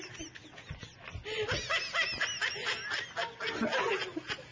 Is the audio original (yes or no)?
yes